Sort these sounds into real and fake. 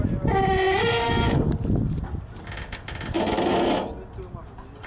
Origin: real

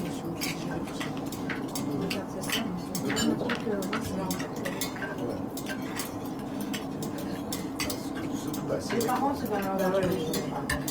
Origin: real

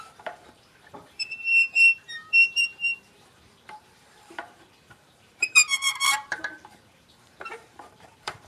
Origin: fake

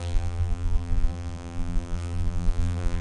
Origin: fake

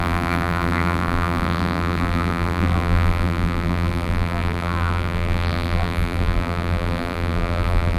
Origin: fake